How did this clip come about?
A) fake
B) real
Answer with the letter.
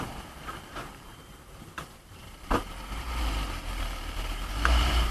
A